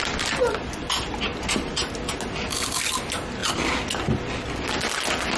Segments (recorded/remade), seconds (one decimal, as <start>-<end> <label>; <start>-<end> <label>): 0.0-5.4 recorded